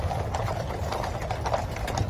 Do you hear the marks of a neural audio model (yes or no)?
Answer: no